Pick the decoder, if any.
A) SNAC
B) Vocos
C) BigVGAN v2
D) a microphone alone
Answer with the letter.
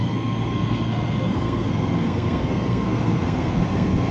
A